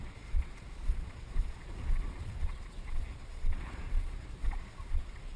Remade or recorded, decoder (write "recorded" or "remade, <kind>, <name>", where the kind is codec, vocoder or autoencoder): remade, vocoder, Vocos